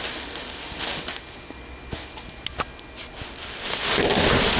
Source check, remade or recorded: recorded